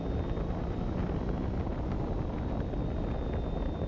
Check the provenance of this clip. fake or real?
real